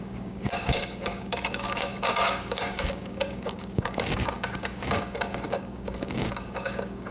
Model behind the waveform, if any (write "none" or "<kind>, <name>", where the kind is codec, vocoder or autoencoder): codec, DAC